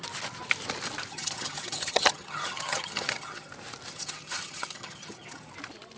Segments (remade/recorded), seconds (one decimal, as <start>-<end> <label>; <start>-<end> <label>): 0.0-1.1 recorded; 1.1-3.5 remade; 3.5-3.9 recorded; 3.9-5.5 remade; 5.5-6.0 recorded